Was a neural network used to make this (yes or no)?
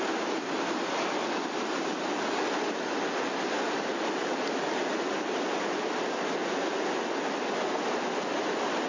no